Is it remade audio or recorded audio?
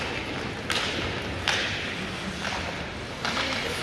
recorded